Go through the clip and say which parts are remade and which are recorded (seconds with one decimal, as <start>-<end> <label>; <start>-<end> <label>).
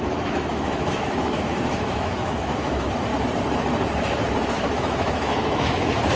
0.0-3.1 remade; 3.1-4.7 recorded; 4.7-6.2 remade